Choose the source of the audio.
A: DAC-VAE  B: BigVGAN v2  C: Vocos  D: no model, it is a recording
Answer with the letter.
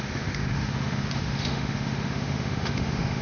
A